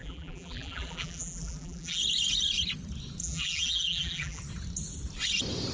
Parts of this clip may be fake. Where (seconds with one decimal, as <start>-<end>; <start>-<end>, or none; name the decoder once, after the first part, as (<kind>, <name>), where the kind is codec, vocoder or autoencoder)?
0.0-2.0 (vocoder, BigVGAN v2); 3.2-4.4